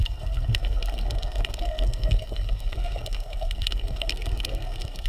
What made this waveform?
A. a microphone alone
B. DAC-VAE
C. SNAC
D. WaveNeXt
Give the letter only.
C